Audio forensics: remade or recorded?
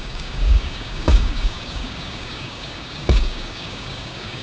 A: remade